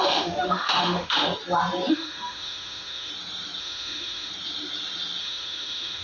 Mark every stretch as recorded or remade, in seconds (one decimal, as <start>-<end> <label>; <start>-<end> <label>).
0.0-1.3 remade; 1.3-1.9 recorded; 1.9-3.1 remade; 3.1-3.6 recorded; 3.6-4.3 remade; 4.3-5.2 recorded; 5.2-6.0 remade